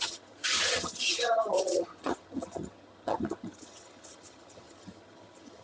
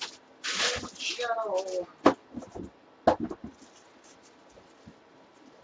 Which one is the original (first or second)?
second